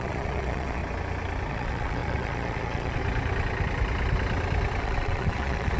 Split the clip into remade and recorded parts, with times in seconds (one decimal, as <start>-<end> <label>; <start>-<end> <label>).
0.0-0.8 remade; 0.8-1.5 recorded; 1.5-3.0 remade; 3.0-4.8 recorded; 4.8-5.8 remade